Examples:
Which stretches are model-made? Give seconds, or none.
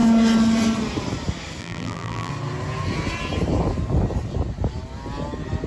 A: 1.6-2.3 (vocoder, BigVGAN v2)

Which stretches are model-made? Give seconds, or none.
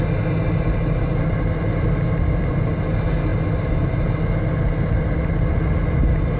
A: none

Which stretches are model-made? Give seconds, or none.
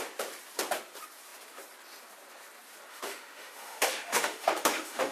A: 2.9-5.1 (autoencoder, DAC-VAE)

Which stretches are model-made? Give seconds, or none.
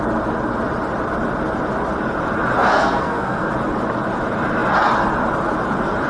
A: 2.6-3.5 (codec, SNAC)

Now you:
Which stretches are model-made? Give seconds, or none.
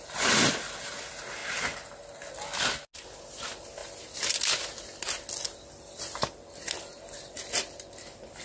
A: none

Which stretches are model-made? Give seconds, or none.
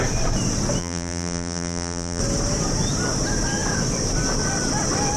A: 0.8-2.2 (vocoder, BigVGAN v2)